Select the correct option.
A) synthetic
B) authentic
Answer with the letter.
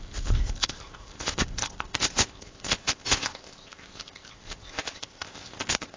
A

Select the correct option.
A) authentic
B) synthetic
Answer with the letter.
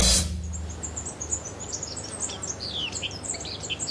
A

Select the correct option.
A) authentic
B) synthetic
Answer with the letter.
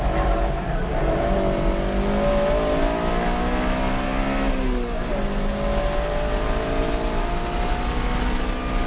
A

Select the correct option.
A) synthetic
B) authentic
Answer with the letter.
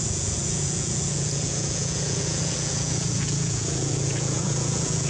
A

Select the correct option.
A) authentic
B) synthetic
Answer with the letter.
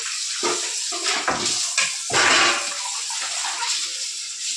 A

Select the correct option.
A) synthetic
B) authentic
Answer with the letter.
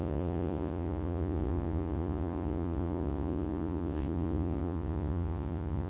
A